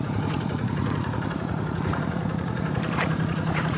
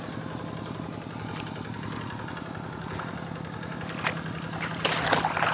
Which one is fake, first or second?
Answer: first